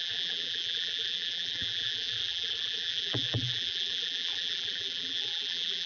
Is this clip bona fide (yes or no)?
no